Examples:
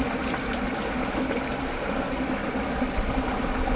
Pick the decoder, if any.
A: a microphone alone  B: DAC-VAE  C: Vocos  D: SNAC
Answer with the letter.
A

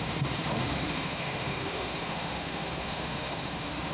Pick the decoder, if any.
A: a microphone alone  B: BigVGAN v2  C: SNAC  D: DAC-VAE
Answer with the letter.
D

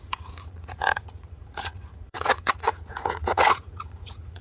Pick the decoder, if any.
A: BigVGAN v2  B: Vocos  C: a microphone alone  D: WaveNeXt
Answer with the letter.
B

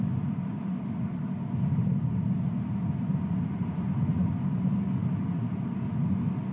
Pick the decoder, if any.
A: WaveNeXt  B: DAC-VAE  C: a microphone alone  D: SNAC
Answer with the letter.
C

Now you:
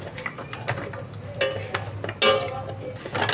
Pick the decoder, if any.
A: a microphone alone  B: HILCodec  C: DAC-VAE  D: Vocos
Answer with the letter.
A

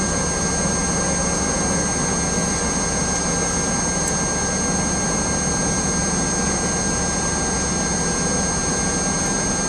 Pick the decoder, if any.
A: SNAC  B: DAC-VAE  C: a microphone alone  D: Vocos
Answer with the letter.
C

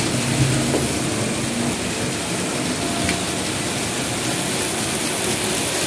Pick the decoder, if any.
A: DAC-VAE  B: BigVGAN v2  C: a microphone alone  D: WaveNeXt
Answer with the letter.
C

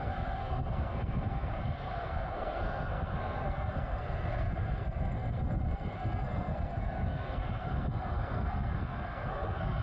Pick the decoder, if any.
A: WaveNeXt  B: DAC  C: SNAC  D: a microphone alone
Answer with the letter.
C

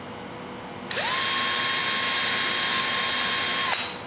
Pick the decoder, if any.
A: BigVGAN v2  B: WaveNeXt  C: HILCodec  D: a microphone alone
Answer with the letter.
D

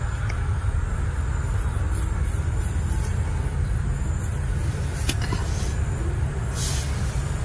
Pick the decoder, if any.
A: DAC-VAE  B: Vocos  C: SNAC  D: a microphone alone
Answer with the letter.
D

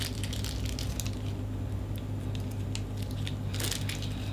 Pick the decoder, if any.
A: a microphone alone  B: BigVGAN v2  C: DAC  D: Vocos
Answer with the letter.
A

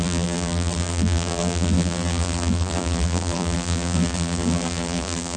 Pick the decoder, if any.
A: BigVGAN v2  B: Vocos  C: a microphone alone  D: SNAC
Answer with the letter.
A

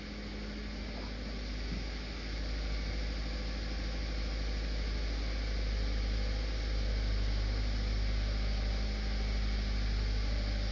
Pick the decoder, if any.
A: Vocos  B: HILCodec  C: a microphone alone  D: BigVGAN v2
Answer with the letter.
C